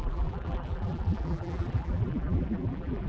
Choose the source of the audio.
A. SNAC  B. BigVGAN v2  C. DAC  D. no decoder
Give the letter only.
B